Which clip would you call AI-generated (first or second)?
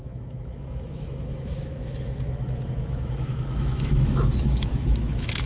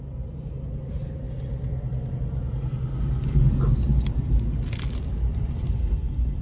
first